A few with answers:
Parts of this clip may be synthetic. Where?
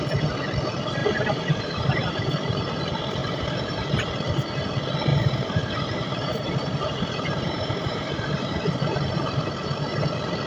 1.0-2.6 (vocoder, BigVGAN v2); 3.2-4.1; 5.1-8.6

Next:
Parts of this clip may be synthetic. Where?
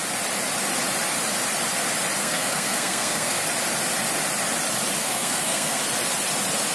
2.2-3.5 (codec, SNAC); 5.0-5.8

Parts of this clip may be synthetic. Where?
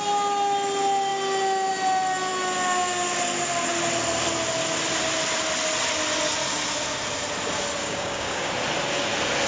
7.8-8.5 (codec, DAC)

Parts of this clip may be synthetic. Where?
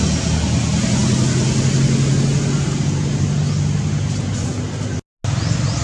none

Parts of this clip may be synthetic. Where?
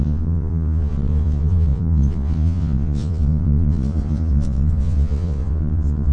0.0-6.1 (vocoder, Vocos)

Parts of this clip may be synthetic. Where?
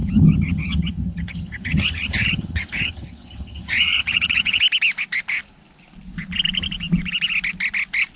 0.0-4.6 (vocoder, HiFi-GAN)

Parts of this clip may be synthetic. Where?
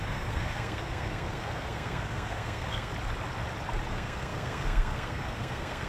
0.0-2.9 (codec, SNAC); 3.9-5.9